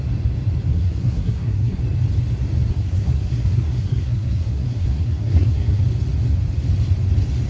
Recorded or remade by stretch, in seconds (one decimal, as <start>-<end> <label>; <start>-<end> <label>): 0.0-0.7 recorded; 0.7-1.8 remade; 1.8-2.7 recorded; 2.7-5.8 remade; 5.8-7.5 recorded